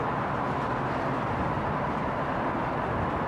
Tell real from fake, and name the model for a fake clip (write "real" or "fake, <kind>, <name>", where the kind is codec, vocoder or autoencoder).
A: real